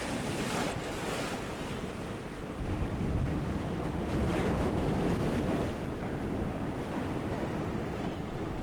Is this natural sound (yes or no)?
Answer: yes